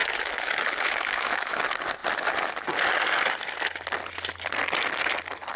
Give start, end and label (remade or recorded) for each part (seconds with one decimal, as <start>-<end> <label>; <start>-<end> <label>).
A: 0.0-1.6 remade; 1.6-5.6 recorded